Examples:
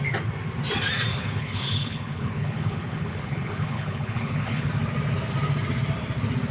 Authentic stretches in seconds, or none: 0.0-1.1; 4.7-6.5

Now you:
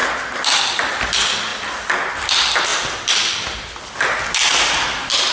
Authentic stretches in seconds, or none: 0.0-5.3

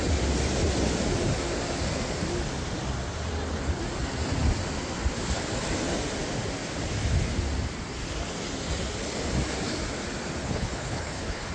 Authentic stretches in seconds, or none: 0.0-10.4